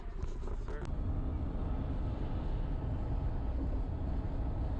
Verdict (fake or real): real